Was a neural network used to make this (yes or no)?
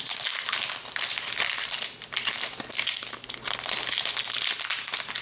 no